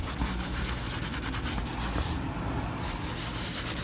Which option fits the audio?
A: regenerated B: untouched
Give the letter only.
A